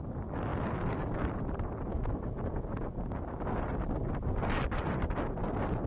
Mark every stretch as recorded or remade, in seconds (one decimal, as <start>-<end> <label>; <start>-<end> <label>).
0.0-5.9 recorded